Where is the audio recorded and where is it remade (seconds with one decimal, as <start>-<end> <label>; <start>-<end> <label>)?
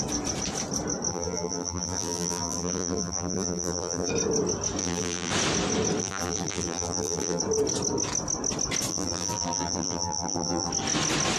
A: 0.0-1.1 recorded; 1.1-4.1 remade; 4.1-4.8 recorded; 4.8-5.3 remade; 5.3-6.0 recorded; 6.0-7.4 remade; 7.4-8.9 recorded; 8.9-10.7 remade; 10.7-11.4 recorded